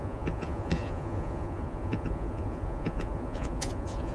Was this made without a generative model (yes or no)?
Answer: no